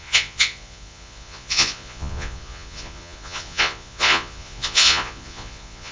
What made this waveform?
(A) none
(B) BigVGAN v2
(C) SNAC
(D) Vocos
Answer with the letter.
D